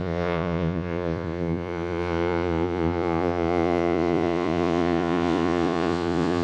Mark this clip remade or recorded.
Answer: remade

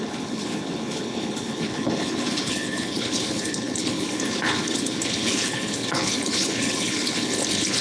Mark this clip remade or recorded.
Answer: remade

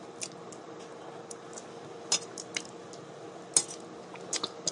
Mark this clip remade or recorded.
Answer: recorded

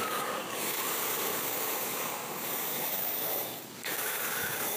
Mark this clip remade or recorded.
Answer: remade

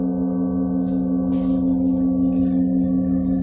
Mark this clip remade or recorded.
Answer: recorded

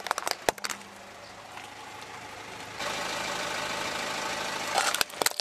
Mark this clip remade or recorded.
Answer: recorded